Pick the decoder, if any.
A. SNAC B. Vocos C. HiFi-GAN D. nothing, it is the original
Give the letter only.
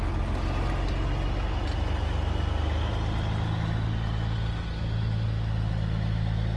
D